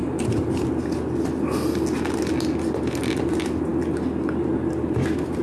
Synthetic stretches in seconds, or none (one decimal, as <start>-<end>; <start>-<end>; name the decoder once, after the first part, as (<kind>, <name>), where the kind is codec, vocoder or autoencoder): none